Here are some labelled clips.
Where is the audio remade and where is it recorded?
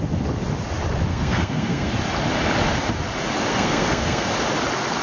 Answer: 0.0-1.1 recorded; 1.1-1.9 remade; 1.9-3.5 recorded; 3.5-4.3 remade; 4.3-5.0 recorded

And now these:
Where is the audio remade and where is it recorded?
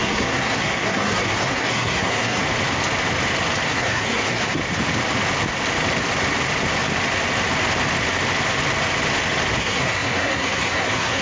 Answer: 0.0-2.4 remade; 2.4-3.7 recorded; 3.7-4.6 remade; 4.6-9.6 recorded; 9.6-11.2 remade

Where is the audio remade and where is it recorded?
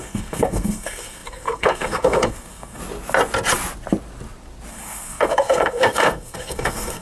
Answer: 0.0-2.8 remade; 2.8-4.7 recorded; 4.7-7.0 remade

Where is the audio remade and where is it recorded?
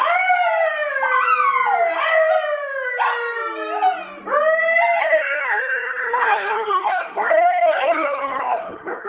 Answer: 0.0-5.0 recorded; 5.0-9.1 remade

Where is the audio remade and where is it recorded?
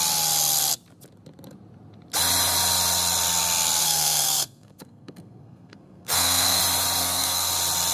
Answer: 0.0-3.8 recorded; 3.8-6.6 remade; 6.6-7.0 recorded; 7.0-7.5 remade; 7.5-7.9 recorded